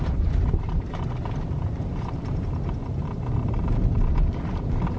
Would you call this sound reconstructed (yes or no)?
yes